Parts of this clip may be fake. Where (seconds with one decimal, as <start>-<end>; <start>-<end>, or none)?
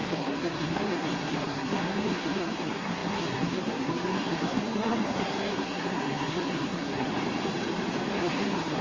0.0-7.1; 8.1-8.8